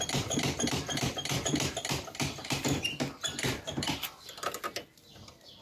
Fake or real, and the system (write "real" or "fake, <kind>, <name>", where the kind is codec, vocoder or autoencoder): fake, vocoder, BigVGAN v2